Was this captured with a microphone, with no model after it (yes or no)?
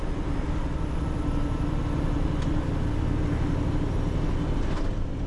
yes